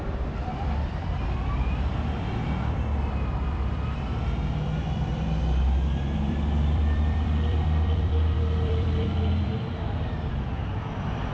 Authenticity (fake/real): fake